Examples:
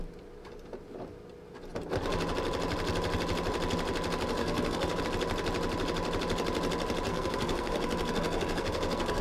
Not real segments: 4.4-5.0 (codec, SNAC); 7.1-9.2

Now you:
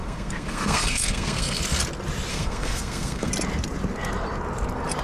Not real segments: 0.0-1.6 (codec, SNAC); 2.3-3.3

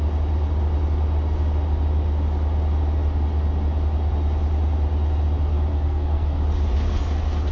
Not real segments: 5.7-6.4 (codec, SNAC)

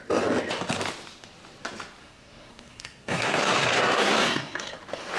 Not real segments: 2.0-4.8 (codec, SNAC)

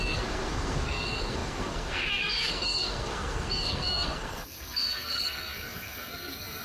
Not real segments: 0.0-6.6 (codec, SNAC)